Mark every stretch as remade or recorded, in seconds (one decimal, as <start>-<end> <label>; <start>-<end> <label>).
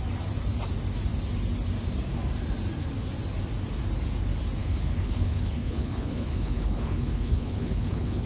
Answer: 0.0-4.6 recorded; 4.6-8.3 remade